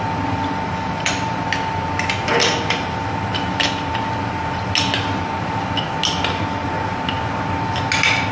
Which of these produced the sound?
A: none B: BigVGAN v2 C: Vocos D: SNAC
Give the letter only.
A